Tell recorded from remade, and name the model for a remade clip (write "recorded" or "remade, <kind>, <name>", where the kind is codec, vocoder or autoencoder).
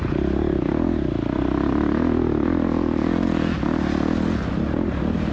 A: recorded